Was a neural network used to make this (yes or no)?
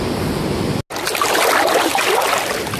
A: no